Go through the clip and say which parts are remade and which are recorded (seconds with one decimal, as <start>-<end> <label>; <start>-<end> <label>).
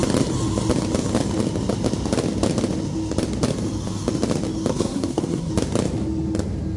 0.0-4.7 recorded; 4.7-5.5 remade; 5.5-6.8 recorded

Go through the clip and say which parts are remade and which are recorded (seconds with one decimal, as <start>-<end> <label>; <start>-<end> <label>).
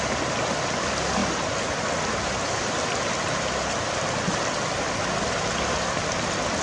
0.0-6.6 recorded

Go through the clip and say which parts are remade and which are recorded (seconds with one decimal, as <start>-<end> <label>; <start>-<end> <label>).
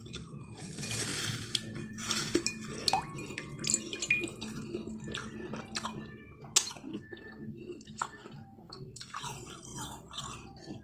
0.0-6.9 recorded; 6.9-9.2 remade; 9.2-10.8 recorded